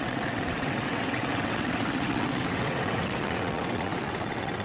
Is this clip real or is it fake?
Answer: fake